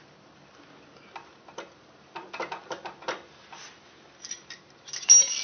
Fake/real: real